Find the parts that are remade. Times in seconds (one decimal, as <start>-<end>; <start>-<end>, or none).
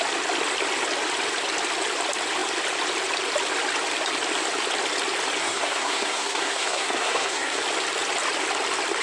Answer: 5.4-7.6